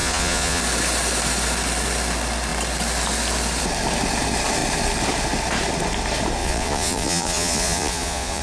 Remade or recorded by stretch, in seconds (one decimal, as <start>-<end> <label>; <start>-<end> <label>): 0.0-0.6 remade; 0.6-6.4 recorded; 6.4-8.4 remade